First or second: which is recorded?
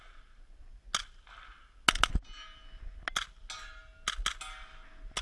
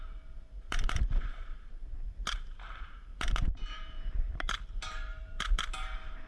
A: first